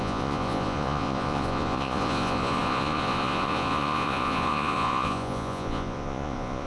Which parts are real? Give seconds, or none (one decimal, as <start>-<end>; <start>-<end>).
none